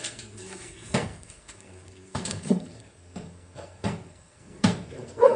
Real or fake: fake